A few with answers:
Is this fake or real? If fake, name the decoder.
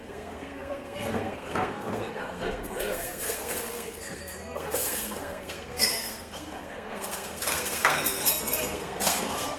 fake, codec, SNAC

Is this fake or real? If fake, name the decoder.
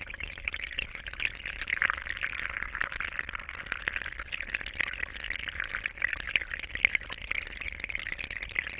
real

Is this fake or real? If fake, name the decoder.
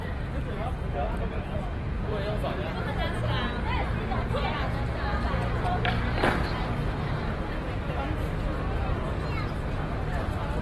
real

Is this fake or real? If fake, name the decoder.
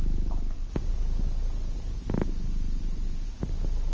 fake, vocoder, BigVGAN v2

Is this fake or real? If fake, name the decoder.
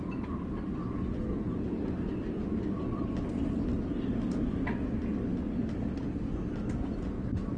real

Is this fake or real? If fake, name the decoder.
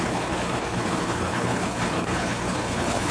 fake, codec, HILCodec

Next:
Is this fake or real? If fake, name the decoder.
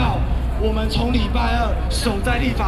real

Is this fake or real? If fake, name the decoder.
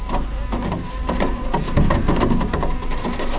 real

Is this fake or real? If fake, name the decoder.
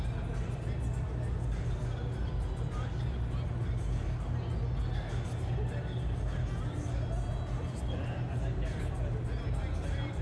real